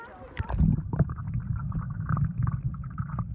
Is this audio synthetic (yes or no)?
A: no